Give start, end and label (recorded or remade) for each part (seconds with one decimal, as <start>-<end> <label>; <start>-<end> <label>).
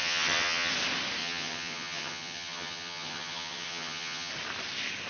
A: 0.0-0.7 remade; 0.7-1.2 recorded; 1.2-4.3 remade; 4.3-5.1 recorded